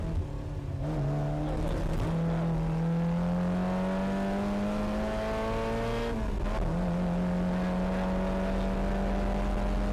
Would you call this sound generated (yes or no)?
no